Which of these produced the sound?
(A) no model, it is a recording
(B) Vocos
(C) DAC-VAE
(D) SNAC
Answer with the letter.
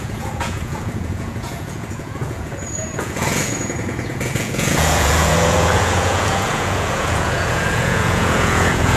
B